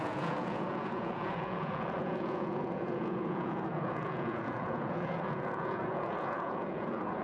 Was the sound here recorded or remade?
remade